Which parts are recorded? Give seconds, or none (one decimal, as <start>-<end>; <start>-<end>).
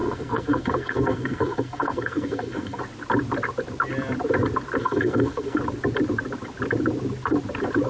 2.8-4.8; 5.6-7.9